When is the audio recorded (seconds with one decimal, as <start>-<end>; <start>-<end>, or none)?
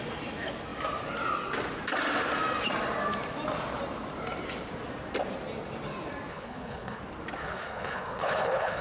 0.0-6.3; 7.0-7.4